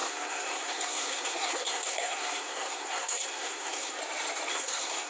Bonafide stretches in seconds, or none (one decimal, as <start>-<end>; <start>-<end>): 4.0-4.5